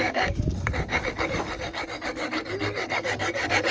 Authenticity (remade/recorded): remade